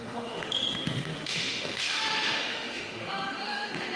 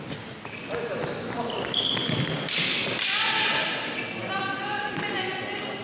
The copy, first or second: first